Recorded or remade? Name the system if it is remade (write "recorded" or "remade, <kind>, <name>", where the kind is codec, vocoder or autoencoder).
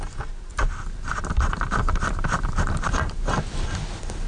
recorded